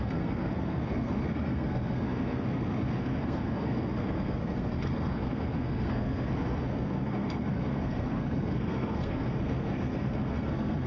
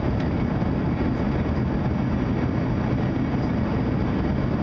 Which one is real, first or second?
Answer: second